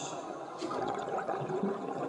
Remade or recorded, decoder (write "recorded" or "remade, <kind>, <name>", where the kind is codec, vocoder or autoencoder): remade, vocoder, Vocos